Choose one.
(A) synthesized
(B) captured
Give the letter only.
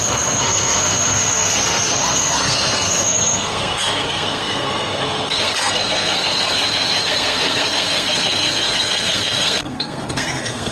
A